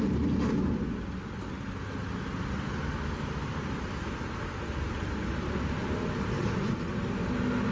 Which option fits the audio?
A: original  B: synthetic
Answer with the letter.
A